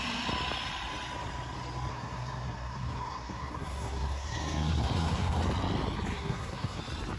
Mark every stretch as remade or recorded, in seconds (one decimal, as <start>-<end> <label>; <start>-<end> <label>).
0.0-1.9 recorded; 1.9-5.4 remade; 5.4-6.1 recorded; 6.1-6.8 remade; 6.8-7.2 recorded